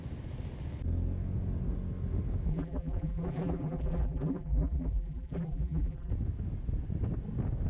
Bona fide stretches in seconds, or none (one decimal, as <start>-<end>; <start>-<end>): 0.0-2.5; 6.1-7.7